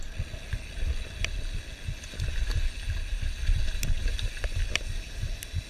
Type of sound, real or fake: real